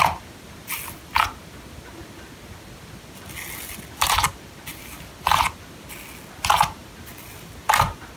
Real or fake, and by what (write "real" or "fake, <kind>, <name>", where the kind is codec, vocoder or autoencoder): real